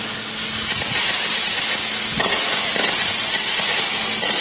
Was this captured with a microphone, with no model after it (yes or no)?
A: yes